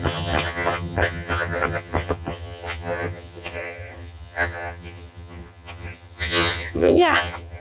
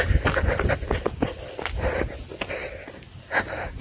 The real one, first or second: second